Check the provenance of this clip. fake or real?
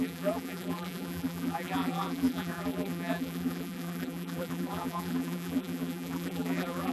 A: fake